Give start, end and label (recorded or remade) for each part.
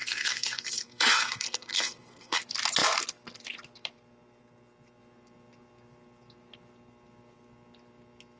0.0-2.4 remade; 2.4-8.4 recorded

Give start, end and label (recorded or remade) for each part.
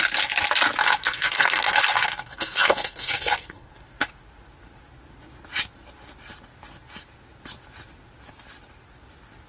0.0-0.8 recorded; 0.8-3.7 remade; 3.7-9.5 recorded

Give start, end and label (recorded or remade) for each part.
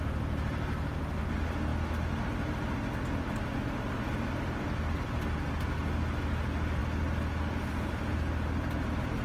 0.0-9.2 recorded